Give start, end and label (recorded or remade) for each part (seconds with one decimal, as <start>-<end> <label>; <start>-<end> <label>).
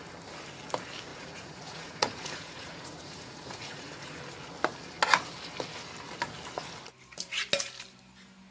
0.0-1.1 recorded; 1.1-4.2 remade; 4.2-8.5 recorded